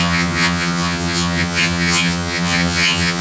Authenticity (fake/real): fake